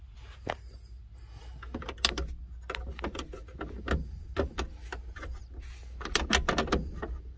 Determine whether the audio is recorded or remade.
recorded